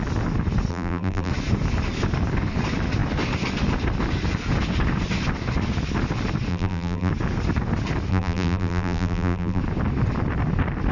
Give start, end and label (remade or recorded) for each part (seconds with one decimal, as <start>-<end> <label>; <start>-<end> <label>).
0.0-0.7 recorded; 0.7-1.3 remade; 1.3-6.5 recorded; 6.5-7.1 remade; 7.1-8.1 recorded; 8.1-9.6 remade; 9.6-10.9 recorded